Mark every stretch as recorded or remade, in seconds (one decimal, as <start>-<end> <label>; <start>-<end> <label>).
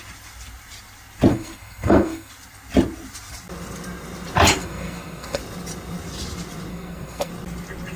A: 0.0-1.3 recorded; 1.3-2.3 remade; 2.3-4.6 recorded; 4.6-5.4 remade; 5.4-6.7 recorded; 6.7-7.3 remade; 7.3-8.0 recorded